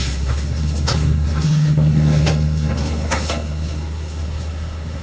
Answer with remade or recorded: remade